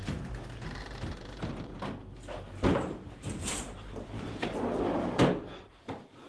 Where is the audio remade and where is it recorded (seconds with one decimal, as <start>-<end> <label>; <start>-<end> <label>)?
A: 0.0-1.7 remade; 1.7-2.7 recorded; 2.7-4.5 remade; 4.5-5.7 recorded; 5.7-6.3 remade